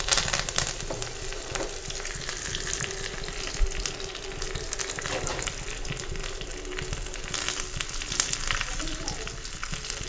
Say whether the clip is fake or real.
real